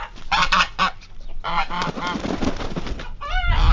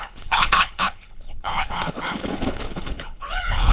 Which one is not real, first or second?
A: second